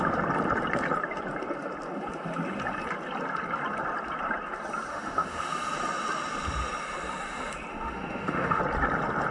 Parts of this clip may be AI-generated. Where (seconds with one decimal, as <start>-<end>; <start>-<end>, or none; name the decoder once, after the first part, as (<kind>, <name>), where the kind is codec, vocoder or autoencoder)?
4.9-5.5 (autoencoder, DAC-VAE); 7.7-8.6